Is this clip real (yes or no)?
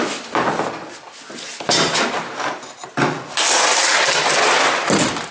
yes